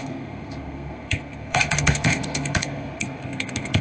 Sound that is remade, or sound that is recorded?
remade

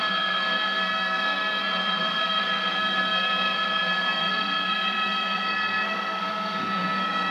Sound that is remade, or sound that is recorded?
remade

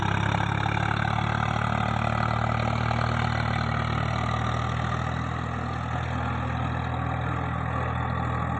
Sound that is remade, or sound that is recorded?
recorded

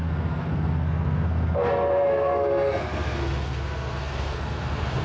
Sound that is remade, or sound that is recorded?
remade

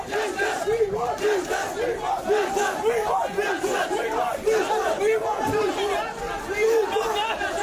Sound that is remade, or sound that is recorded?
recorded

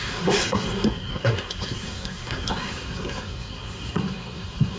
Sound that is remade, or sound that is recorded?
remade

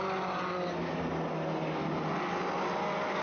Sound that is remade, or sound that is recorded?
recorded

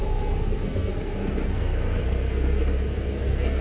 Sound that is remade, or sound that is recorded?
remade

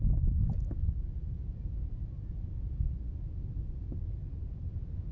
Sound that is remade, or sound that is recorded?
recorded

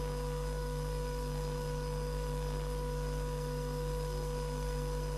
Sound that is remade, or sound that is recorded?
remade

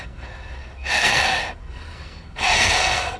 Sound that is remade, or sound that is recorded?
remade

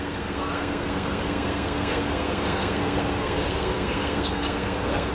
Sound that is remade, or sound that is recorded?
remade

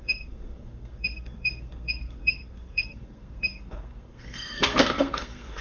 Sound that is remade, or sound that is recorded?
remade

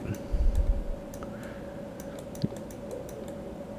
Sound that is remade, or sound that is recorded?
recorded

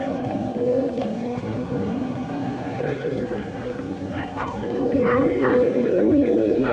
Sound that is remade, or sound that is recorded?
remade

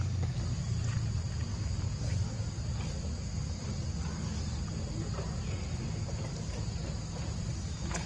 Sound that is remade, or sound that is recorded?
recorded